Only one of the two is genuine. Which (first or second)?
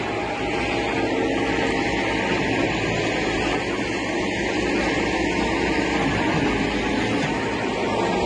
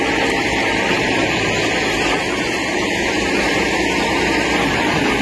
first